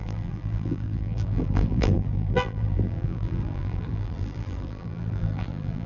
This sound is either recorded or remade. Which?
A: remade